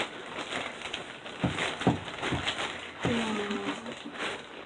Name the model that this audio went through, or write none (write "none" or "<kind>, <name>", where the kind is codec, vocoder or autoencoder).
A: none